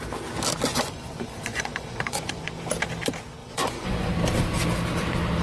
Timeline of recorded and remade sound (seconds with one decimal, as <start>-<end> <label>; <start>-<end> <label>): 0.0-0.7 recorded; 0.7-2.5 remade; 2.5-3.4 recorded; 3.4-4.1 remade; 4.1-5.4 recorded